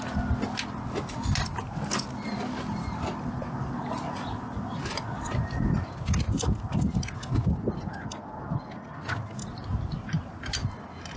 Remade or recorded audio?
recorded